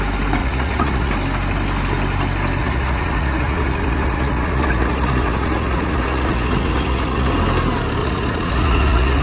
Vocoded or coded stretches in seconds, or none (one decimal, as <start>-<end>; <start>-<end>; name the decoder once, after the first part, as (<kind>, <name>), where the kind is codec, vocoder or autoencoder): 0.4-1.1 (vocoder, Vocos); 2.6-7.3; 8.0-9.2

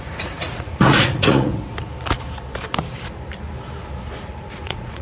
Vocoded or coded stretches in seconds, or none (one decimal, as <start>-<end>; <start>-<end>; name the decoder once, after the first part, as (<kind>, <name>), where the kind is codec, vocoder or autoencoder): 0.0-1.5 (vocoder, Vocos); 4.5-5.0

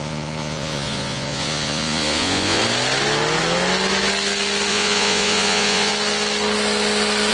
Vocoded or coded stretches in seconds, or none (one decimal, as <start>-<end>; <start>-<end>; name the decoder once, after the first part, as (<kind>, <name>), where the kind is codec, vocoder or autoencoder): 0.0-2.6 (vocoder, Vocos); 4.7-5.9

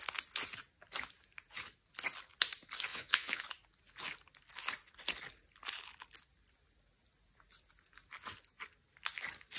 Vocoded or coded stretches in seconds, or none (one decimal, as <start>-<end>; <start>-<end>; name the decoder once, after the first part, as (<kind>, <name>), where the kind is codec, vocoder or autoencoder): 2.9-3.4 (vocoder, Vocos)

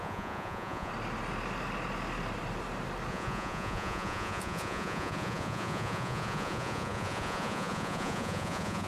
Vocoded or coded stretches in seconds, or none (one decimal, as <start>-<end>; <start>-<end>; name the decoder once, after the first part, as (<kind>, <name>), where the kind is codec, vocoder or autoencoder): 0.0-0.9 (vocoder, Vocos); 3.1-8.9